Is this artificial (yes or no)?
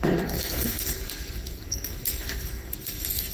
yes